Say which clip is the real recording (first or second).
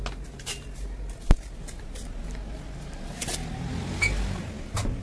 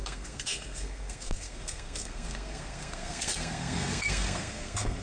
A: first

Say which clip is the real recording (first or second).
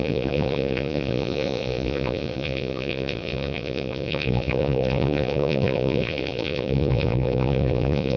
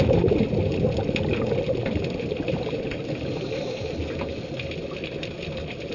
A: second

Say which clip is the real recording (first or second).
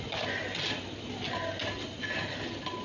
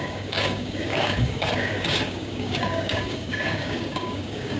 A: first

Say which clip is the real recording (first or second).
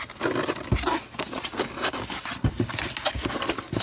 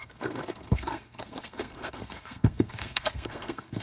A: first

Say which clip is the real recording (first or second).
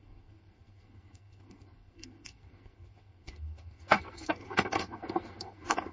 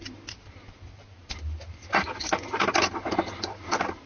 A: second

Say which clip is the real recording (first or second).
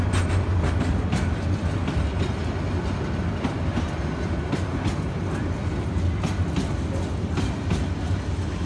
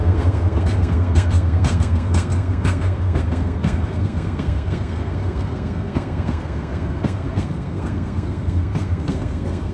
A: first